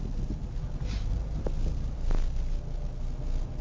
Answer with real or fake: real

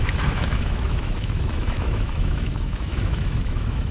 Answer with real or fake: fake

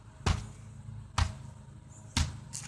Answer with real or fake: real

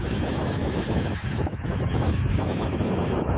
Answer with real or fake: fake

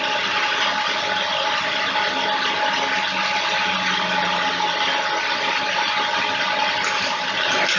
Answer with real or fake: real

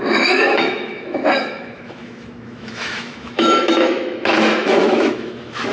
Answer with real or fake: fake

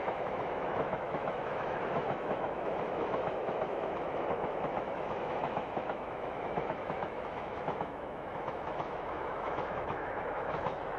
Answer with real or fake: fake